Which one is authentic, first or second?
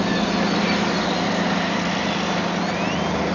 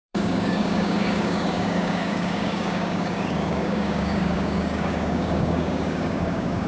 first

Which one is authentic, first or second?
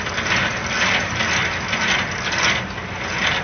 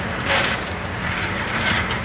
first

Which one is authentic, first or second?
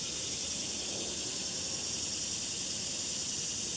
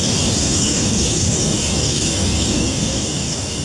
first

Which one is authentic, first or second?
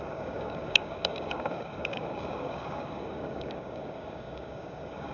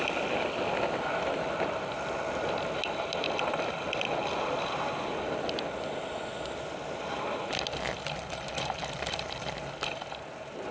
second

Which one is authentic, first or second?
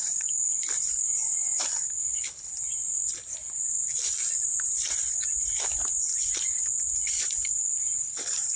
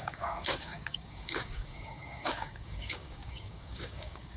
first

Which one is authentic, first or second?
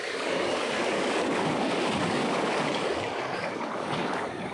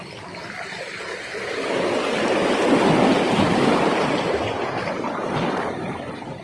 second